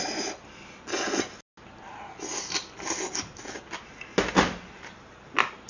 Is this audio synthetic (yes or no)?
no